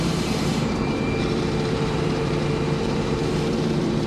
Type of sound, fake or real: fake